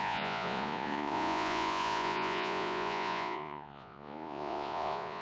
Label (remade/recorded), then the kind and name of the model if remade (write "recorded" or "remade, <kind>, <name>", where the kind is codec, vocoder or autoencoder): remade, vocoder, Vocos